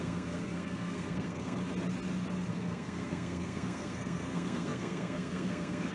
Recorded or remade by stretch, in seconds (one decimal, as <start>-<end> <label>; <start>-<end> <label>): 0.0-1.6 remade; 1.6-2.5 recorded; 2.5-5.9 remade